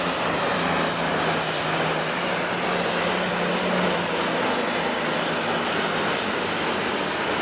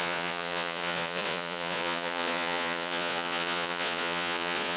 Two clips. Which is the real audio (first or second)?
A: first